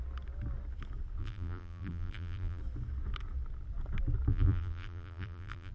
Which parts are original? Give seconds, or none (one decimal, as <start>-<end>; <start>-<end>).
0.0-1.2; 2.6-4.3